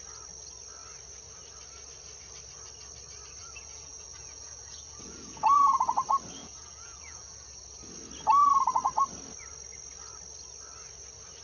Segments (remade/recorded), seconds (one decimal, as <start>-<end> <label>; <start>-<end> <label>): 0.0-3.4 recorded; 3.4-5.9 remade; 5.9-6.4 recorded; 6.4-7.5 remade; 7.5-11.4 recorded